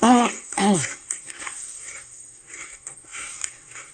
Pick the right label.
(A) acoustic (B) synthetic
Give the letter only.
B